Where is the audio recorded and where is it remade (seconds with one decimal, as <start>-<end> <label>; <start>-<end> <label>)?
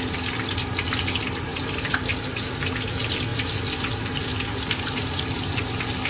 0.0-1.5 recorded; 1.5-2.1 remade; 2.1-3.3 recorded; 3.3-3.9 remade; 3.9-4.3 recorded; 4.3-5.6 remade; 5.6-6.1 recorded